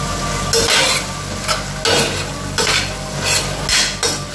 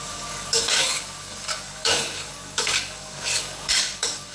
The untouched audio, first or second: first